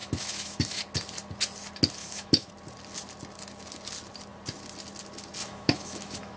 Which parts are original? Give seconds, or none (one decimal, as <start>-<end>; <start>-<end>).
0.8-2.0; 2.5-5.4